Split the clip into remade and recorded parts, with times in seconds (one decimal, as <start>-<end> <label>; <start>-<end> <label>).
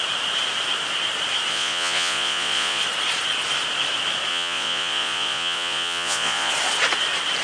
0.0-1.5 recorded; 1.5-2.8 remade; 2.8-4.3 recorded; 4.3-6.5 remade; 6.5-7.4 recorded